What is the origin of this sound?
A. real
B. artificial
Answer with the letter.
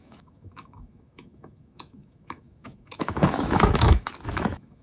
B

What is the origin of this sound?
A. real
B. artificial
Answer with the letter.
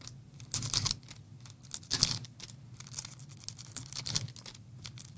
A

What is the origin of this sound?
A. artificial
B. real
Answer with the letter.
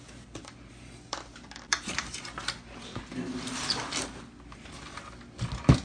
B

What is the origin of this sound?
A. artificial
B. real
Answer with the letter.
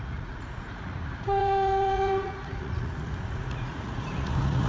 A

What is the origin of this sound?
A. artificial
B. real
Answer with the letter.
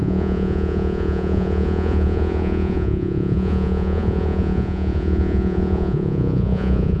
A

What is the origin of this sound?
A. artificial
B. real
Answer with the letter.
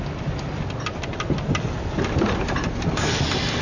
B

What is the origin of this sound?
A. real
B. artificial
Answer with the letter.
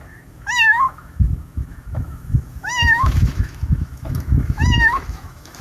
B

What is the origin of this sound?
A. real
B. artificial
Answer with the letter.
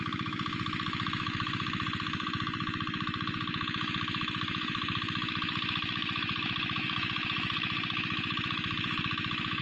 B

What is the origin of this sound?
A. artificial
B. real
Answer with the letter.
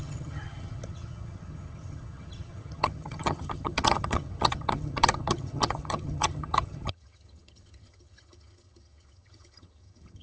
A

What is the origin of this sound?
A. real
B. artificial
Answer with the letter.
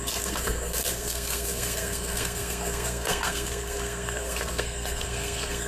B